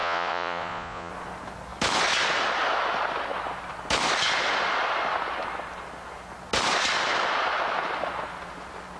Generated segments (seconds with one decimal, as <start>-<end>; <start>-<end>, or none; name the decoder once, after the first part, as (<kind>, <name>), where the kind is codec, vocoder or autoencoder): 0.0-1.1 (vocoder, Vocos)